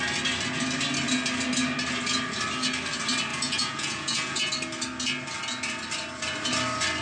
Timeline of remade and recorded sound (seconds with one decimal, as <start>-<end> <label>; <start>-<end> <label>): 0.0-3.3 recorded; 3.3-4.5 remade; 4.5-7.0 recorded